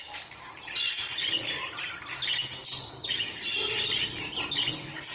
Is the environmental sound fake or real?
real